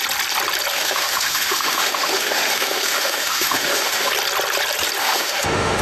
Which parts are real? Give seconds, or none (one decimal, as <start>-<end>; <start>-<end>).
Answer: 0.0-0.7; 4.1-5.0